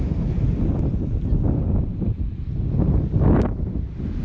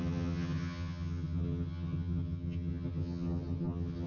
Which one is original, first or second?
first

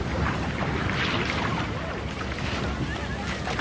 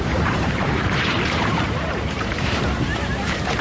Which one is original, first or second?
first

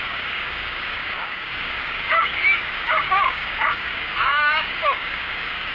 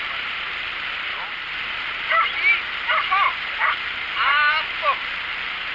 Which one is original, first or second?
second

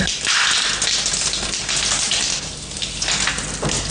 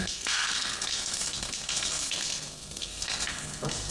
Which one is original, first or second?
first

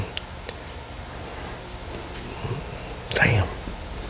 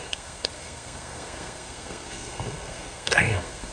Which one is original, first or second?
first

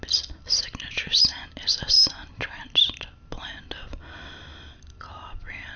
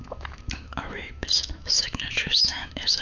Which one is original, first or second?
first